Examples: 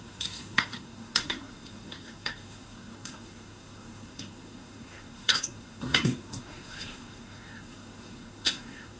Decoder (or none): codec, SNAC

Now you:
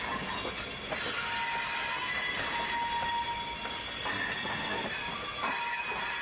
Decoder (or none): none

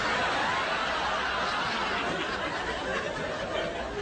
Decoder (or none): none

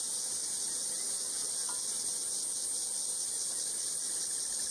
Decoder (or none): none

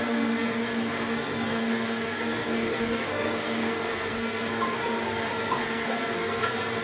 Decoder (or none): codec, SNAC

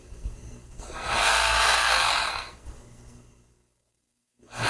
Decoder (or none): codec, SNAC